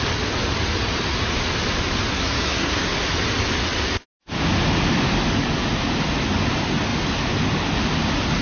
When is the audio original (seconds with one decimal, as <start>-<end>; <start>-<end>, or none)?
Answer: 0.0-2.1; 2.9-8.4